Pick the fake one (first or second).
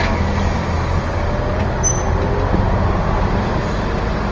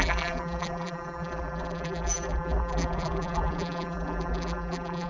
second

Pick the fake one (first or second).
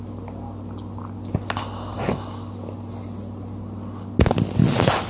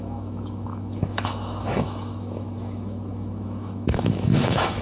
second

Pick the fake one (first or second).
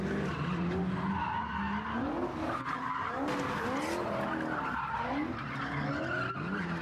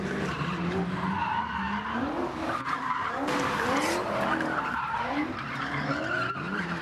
second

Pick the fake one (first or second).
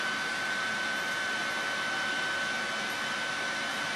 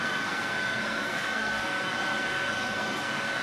second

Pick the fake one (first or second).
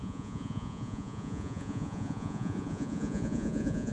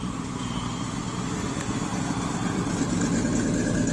first